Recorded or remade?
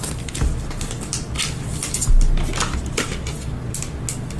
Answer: recorded